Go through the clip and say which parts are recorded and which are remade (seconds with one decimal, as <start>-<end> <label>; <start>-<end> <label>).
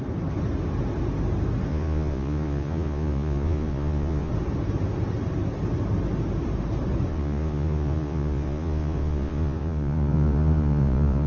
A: 0.0-1.7 recorded; 1.7-4.3 remade; 4.3-7.1 recorded; 7.1-11.3 remade